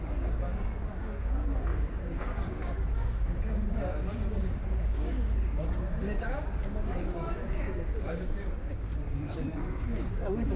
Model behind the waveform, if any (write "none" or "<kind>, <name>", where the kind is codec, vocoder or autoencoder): codec, DAC